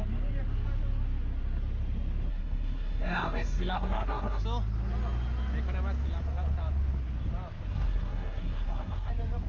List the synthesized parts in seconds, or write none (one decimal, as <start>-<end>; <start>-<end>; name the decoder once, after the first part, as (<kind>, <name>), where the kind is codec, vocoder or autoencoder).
2.3-4.4 (codec, SNAC); 7.7-9.1